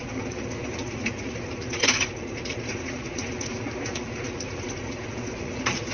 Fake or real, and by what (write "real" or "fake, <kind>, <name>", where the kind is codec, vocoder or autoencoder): fake, vocoder, Vocos